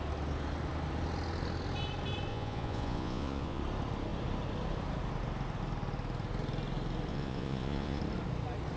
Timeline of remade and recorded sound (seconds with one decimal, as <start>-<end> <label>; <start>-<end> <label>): 0.0-2.3 recorded; 2.3-3.6 remade; 3.6-7.1 recorded; 7.1-8.0 remade; 8.0-8.8 recorded